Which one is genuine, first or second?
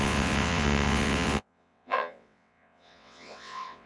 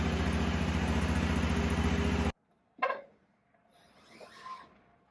second